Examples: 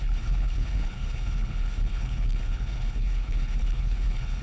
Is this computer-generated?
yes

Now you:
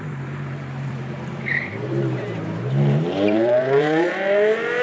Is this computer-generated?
yes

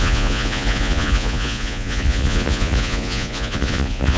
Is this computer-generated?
yes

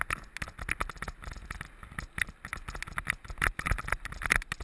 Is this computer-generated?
no